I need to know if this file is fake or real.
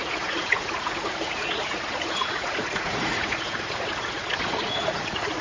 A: fake